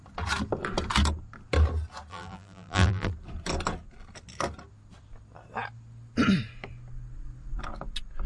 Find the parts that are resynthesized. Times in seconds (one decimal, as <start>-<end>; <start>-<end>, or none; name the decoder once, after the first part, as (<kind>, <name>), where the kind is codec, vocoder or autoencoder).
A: 2.1-3.1 (vocoder, BigVGAN v2)